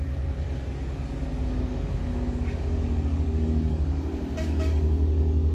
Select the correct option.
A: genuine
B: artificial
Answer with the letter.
B